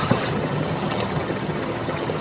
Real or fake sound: fake